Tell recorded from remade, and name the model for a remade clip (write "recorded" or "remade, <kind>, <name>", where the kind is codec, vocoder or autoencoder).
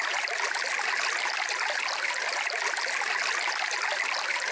recorded